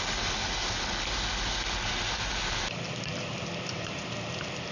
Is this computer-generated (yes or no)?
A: no